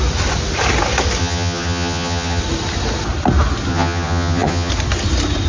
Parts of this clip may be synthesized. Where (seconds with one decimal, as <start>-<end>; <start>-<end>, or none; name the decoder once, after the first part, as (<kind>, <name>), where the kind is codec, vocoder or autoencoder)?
1.2-2.4 (vocoder, HiFi-GAN); 3.7-4.7